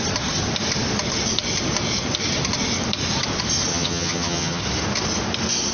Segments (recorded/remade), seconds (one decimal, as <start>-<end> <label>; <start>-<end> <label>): 0.0-3.7 recorded; 3.7-4.6 remade; 4.6-5.7 recorded